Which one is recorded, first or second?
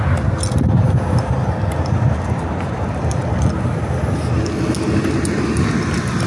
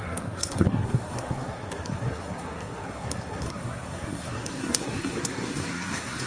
first